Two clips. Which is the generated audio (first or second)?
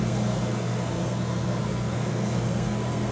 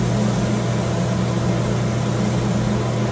first